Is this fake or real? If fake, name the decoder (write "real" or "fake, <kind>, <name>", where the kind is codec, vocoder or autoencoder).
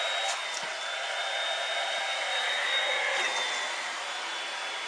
real